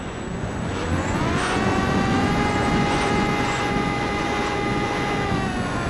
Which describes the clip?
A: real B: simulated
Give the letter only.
B